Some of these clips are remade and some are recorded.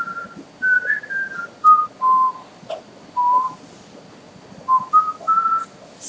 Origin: recorded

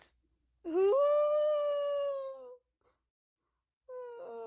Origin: remade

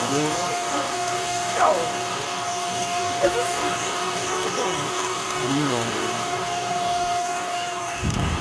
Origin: remade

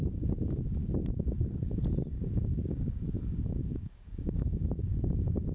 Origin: remade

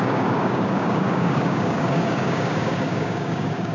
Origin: remade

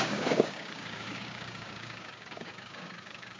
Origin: remade